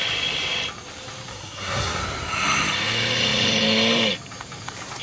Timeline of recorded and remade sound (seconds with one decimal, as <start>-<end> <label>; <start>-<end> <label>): 0.0-1.3 recorded; 1.3-2.0 remade; 2.0-5.0 recorded